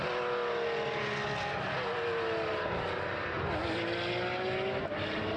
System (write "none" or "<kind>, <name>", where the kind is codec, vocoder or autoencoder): none